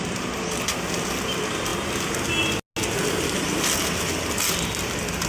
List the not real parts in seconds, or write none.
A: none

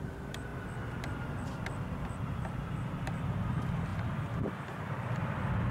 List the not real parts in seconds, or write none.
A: 0.0-0.5; 2.7-5.7

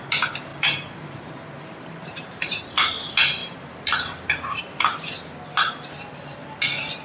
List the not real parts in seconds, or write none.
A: 0.5-2.6; 3.4-4.6

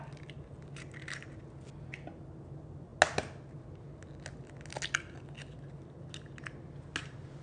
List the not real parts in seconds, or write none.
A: none

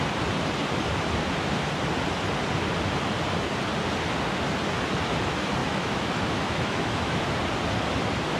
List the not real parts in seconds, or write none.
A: 5.6-7.2